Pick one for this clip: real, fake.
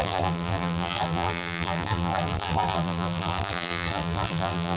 fake